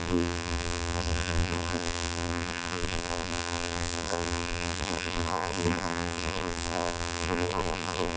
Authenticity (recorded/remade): remade